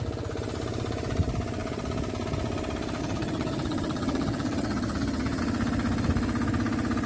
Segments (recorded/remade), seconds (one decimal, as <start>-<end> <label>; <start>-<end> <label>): 0.0-3.0 recorded; 3.0-5.4 remade; 5.4-7.1 recorded